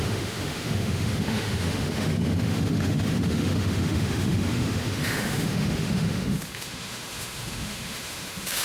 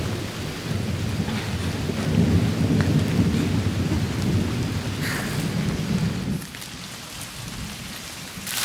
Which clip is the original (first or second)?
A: second